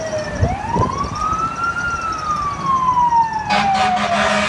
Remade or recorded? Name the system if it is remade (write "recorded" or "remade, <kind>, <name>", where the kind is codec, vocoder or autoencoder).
recorded